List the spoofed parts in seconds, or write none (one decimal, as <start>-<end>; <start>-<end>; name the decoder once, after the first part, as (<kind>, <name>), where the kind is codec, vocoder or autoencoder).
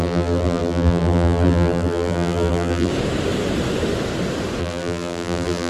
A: 0.0-2.9 (vocoder, BigVGAN v2); 4.6-5.7